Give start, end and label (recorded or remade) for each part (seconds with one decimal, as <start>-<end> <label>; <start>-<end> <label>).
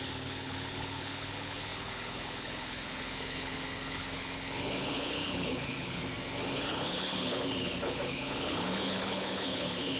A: 0.0-6.0 remade; 6.0-6.5 recorded; 6.5-10.0 remade